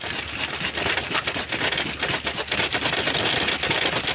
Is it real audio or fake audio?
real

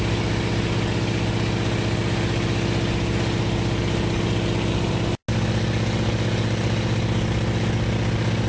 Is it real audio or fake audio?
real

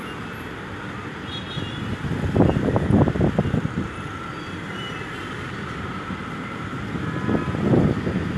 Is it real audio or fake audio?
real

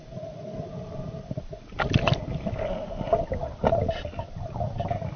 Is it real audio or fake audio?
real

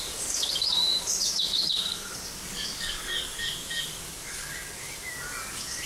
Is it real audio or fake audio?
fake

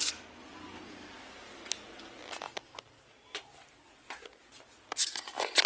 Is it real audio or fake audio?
real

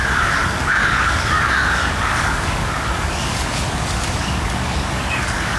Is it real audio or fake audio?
fake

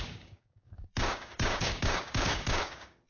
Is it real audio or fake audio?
fake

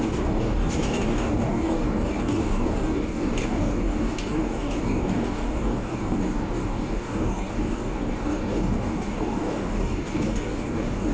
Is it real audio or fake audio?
fake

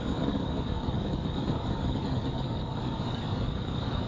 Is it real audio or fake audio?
fake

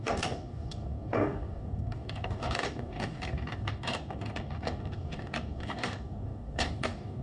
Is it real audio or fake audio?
fake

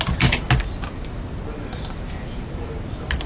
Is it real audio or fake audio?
real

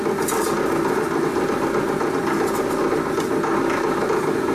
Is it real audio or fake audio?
real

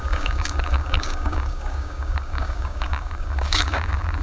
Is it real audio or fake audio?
fake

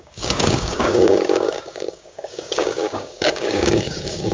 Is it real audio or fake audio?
fake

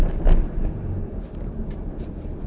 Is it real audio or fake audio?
real